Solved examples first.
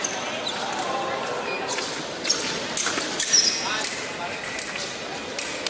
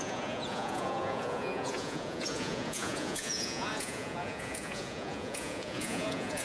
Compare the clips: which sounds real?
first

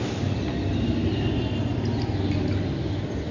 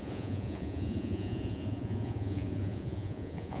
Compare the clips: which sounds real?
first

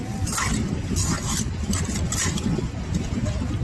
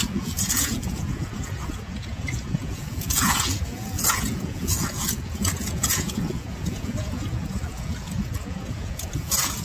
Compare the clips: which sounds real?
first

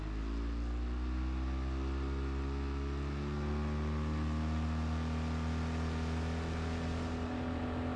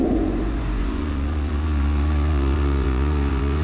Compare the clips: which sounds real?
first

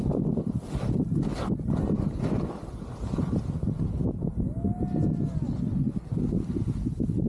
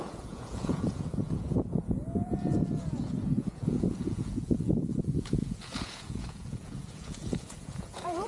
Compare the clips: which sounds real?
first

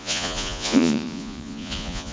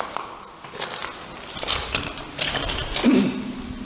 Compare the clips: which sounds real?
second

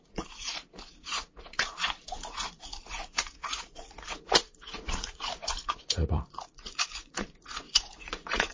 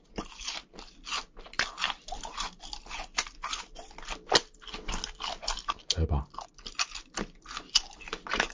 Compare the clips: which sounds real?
second